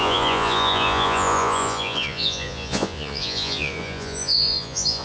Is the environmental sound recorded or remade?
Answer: remade